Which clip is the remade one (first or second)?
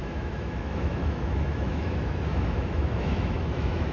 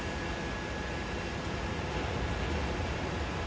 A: first